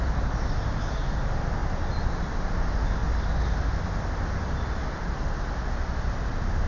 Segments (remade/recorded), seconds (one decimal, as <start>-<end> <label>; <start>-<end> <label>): 0.0-6.7 recorded